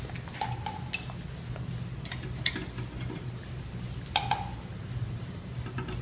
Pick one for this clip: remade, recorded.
recorded